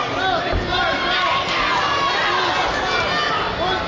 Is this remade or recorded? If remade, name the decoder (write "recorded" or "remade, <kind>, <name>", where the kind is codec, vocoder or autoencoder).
recorded